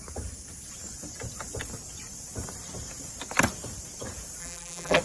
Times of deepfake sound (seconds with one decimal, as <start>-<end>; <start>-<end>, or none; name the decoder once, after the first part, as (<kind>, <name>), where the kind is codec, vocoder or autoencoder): 4.4-5.0 (vocoder, BigVGAN v2)